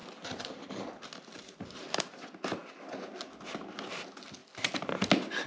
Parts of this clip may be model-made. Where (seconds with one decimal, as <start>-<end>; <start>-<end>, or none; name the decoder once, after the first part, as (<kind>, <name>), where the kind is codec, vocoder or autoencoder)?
0.0-2.0 (vocoder, BigVGAN v2)